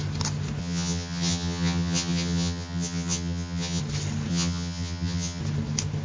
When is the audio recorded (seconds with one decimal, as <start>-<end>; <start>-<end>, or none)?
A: 0.0-0.6; 3.8-4.3; 5.4-6.0